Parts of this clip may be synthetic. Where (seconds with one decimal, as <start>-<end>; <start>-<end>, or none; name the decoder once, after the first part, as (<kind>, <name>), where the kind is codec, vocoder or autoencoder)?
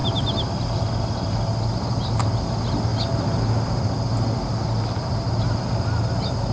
none